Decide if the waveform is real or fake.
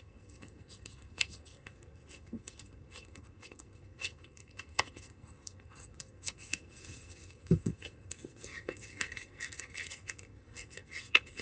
fake